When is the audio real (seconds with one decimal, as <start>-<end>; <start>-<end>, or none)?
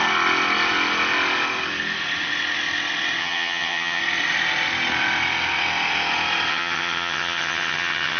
0.0-3.2; 4.0-6.5